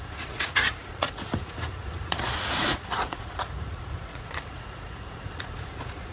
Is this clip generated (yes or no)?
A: yes